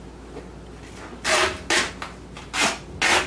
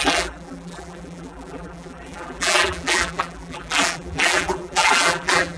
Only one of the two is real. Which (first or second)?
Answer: first